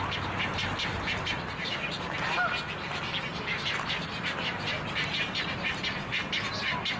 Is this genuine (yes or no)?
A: yes